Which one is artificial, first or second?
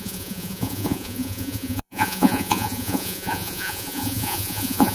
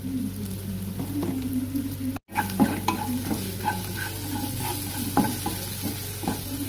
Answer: first